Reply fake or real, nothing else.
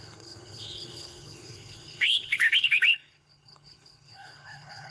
fake